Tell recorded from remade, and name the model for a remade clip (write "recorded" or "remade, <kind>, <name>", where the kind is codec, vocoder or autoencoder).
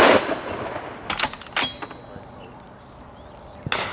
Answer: recorded